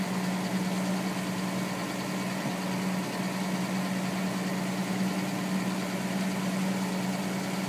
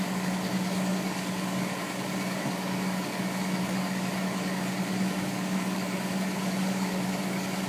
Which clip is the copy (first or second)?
second